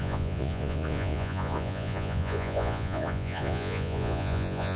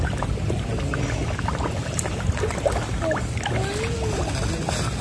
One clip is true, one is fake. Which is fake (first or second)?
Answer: first